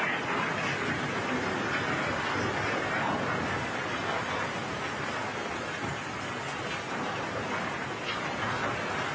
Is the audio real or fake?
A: real